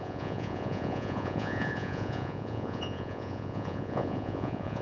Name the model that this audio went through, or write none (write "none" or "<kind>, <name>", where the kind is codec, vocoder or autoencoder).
vocoder, Vocos